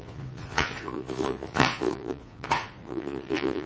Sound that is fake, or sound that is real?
fake